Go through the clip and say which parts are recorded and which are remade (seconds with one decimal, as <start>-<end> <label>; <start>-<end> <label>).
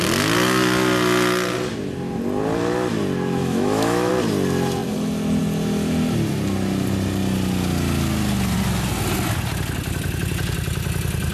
0.0-3.4 recorded; 3.4-4.1 remade; 4.1-11.3 recorded